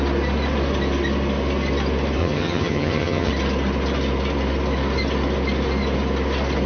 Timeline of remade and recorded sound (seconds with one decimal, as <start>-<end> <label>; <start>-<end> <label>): 0.0-2.2 recorded; 2.2-3.3 remade; 3.3-6.7 recorded